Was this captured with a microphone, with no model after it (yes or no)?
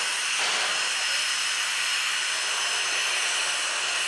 yes